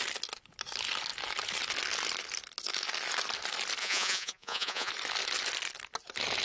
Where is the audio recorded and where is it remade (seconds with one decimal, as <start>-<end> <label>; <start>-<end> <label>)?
0.0-3.8 recorded; 3.8-4.9 remade; 4.9-6.4 recorded